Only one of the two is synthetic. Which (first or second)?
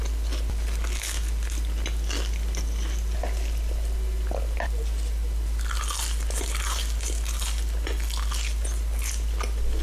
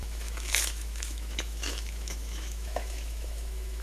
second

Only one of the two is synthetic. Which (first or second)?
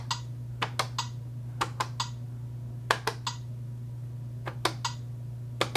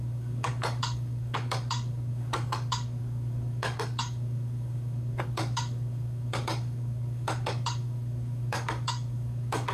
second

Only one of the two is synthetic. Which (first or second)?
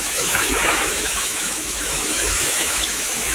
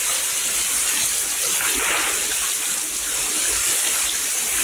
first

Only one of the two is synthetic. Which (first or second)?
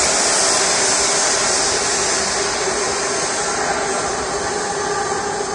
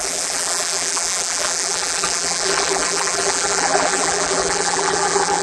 second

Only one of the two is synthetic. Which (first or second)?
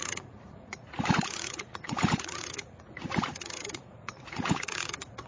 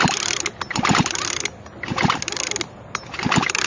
first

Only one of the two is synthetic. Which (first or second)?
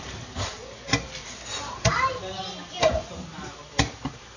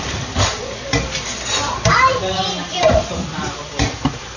second